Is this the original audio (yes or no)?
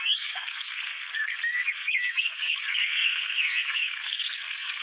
no